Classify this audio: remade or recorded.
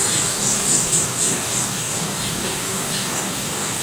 remade